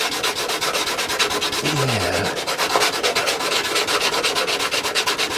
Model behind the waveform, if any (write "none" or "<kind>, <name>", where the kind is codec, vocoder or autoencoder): none